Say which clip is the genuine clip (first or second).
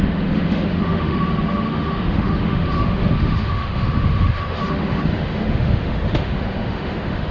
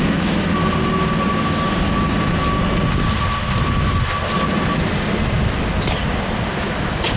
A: second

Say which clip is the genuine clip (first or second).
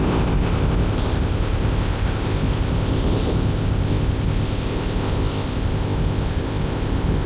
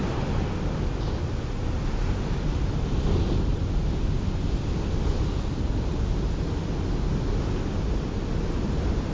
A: second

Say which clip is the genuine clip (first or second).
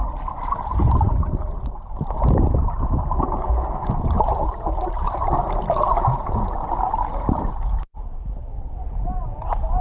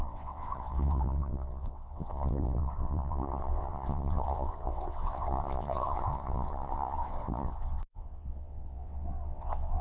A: first